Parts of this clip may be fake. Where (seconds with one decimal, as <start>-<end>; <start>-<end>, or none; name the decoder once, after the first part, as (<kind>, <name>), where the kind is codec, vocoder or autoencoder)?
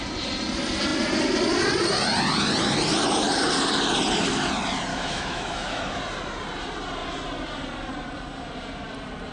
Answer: 4.9-6.0 (autoencoder, DAC-VAE)